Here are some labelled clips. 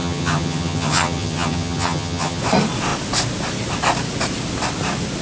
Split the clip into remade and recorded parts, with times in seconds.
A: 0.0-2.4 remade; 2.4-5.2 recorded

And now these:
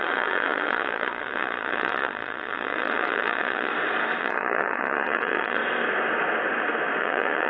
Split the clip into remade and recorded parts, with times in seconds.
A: 0.0-3.7 remade; 3.7-4.2 recorded; 4.2-5.6 remade; 5.6-7.0 recorded; 7.0-7.5 remade

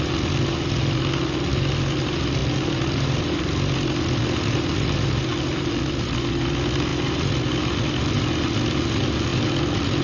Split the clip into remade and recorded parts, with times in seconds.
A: 0.0-10.0 recorded

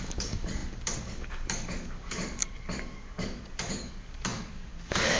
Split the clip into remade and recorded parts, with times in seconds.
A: 0.0-5.2 remade